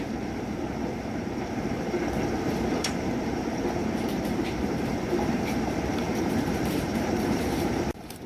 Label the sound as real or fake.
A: fake